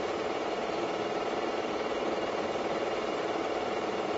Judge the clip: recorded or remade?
remade